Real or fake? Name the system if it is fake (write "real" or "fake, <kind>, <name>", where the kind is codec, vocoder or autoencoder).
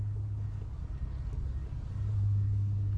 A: fake, codec, DAC